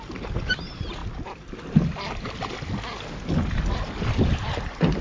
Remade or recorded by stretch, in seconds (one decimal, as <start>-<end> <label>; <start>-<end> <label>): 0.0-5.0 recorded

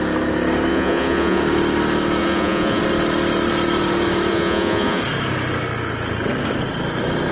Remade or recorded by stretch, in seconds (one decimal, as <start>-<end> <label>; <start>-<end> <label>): 0.0-0.7 recorded; 0.7-1.4 remade; 1.4-2.2 recorded; 2.2-2.8 remade; 2.8-4.3 recorded; 4.3-5.0 remade; 5.0-7.3 recorded

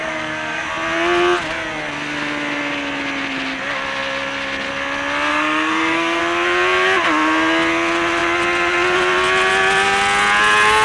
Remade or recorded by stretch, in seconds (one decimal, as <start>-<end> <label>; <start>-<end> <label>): 0.0-0.7 remade; 0.7-5.3 recorded; 5.3-6.2 remade; 6.2-10.8 recorded

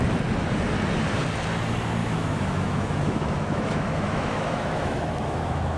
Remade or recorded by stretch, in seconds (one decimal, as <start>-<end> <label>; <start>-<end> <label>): 0.0-2.0 recorded; 2.0-5.8 remade